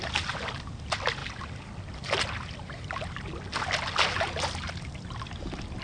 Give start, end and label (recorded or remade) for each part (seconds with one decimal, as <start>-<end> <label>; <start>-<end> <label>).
0.0-5.8 recorded